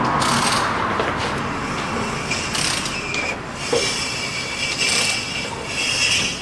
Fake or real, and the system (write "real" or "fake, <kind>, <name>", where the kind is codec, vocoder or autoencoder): real